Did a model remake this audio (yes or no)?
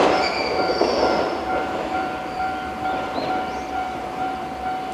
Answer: yes